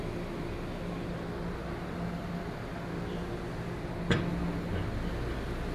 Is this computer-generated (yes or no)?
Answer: no